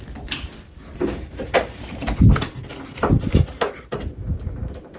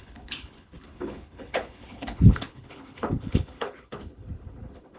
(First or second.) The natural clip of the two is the first